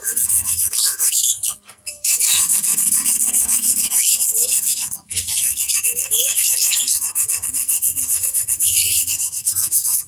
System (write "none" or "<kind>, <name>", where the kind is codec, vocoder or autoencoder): codec, SNAC